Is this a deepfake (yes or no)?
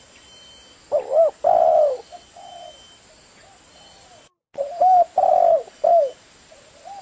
no